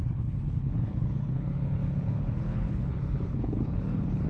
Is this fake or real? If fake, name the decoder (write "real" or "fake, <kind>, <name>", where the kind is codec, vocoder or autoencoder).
fake, codec, HILCodec